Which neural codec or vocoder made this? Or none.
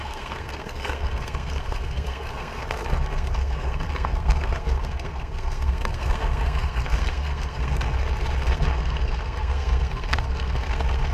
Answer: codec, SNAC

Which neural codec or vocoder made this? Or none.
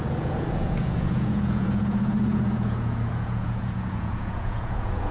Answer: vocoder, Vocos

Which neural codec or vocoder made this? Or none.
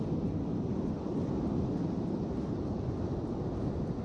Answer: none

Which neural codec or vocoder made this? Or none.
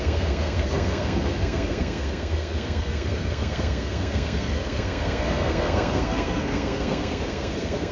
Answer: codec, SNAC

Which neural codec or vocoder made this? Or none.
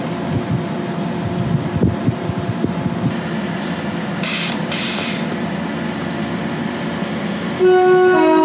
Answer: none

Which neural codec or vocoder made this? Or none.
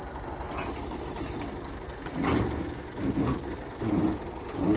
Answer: none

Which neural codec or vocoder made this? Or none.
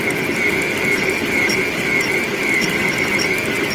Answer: none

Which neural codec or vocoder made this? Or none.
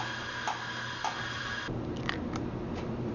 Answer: none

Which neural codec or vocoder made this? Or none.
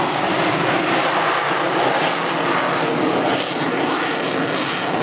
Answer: none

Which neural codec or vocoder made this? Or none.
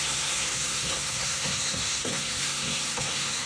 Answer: codec, SNAC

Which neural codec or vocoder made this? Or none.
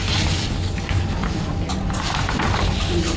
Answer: none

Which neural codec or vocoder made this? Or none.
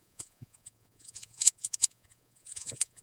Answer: vocoder, Vocos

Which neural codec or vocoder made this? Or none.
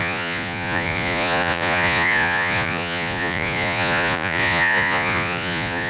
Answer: vocoder, Vocos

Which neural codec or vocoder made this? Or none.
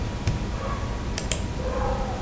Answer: none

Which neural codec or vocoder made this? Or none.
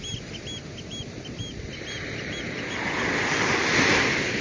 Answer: none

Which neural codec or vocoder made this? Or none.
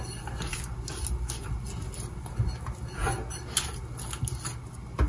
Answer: none